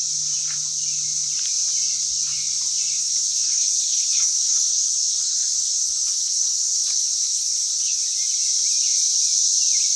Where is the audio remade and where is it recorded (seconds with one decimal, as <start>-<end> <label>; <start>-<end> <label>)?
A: 0.0-3.0 recorded; 3.0-8.0 remade; 8.0-10.0 recorded